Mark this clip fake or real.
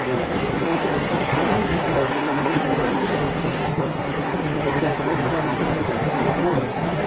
fake